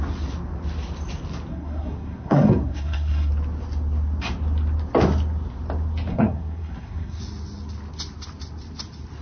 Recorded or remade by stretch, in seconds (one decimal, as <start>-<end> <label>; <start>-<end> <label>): 0.0-1.5 recorded; 1.5-3.3 remade; 3.3-6.1 recorded; 6.1-7.2 remade; 7.2-9.2 recorded